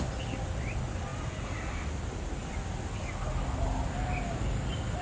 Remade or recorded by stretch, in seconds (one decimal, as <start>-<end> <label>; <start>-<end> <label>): 0.0-5.0 recorded